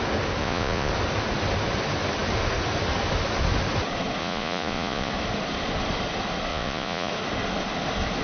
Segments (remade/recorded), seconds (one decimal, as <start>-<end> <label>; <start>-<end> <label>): 0.0-0.4 recorded; 0.4-0.9 remade; 0.9-4.2 recorded; 4.2-5.1 remade; 5.1-6.5 recorded; 6.5-7.1 remade; 7.1-8.2 recorded